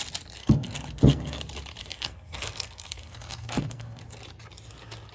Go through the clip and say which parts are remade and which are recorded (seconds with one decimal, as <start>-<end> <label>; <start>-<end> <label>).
0.0-0.4 recorded; 0.4-1.4 remade; 1.4-1.8 recorded; 1.8-4.0 remade; 4.0-5.1 recorded